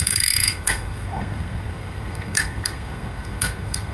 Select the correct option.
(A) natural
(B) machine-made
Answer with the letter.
B